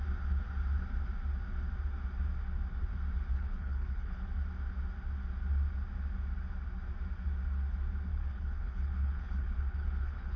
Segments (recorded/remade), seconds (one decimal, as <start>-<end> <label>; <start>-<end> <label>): 0.0-3.3 recorded; 3.3-4.3 remade; 4.3-8.1 recorded; 8.1-10.4 remade